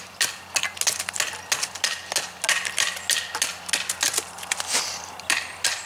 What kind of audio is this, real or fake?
real